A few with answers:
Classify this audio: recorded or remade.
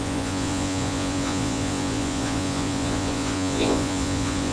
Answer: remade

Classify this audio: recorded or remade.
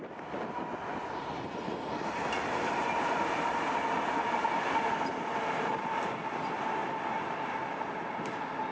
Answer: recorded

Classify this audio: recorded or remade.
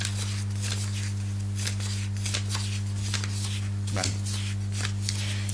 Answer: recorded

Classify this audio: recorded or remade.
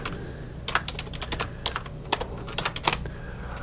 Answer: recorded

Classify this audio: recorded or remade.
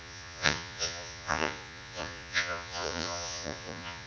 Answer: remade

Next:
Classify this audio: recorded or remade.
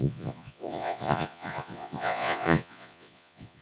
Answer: remade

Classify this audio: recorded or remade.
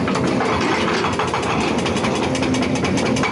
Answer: recorded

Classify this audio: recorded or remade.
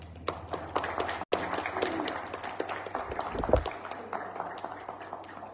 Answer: recorded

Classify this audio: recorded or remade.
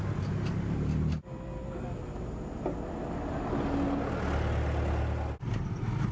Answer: recorded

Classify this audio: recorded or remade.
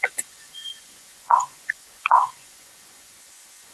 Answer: remade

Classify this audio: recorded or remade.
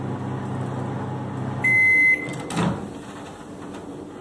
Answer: recorded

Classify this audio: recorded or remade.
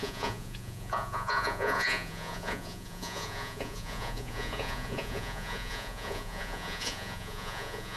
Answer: remade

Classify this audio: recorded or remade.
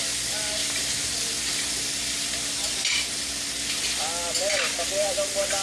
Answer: recorded